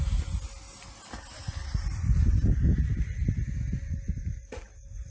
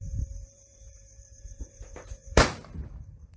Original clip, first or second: first